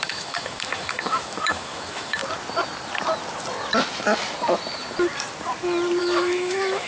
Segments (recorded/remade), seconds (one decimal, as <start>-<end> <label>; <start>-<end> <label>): 0.0-2.2 remade; 2.2-6.0 recorded; 6.0-6.9 remade